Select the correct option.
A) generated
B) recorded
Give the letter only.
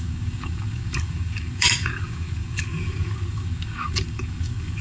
A